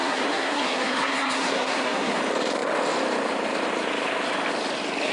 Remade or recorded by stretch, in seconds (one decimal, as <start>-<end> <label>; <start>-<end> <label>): 0.0-2.2 remade; 2.2-5.1 recorded